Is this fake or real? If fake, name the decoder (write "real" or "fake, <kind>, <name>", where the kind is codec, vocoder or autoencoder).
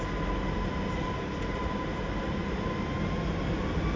real